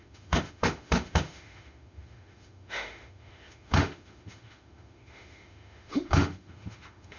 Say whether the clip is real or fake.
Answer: fake